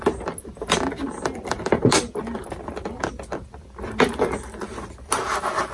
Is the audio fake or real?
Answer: real